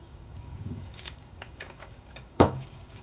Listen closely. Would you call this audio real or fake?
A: fake